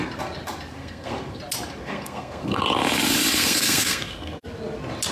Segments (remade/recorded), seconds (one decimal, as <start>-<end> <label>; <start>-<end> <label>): 0.0-0.8 recorded; 0.8-1.4 remade; 1.4-1.8 recorded; 1.8-2.6 remade; 2.6-3.3 recorded; 3.3-4.4 remade; 4.4-5.1 recorded